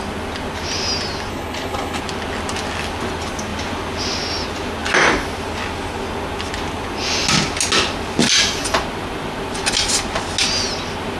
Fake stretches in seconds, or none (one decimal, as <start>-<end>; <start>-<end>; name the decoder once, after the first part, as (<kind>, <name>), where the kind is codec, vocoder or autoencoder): 1.3-2.0 (codec, HILCodec)